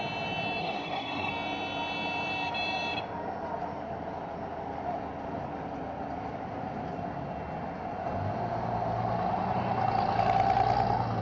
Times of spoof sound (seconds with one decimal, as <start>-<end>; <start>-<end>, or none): 0.6-1.3